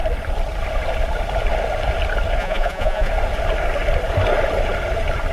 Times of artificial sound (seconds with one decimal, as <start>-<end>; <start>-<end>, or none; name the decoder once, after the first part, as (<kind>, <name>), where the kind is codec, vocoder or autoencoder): 2.4-3.1 (vocoder, Vocos)